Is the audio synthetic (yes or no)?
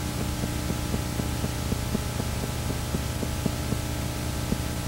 no